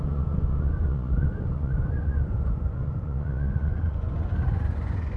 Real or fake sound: fake